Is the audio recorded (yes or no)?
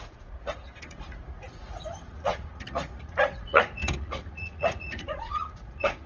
no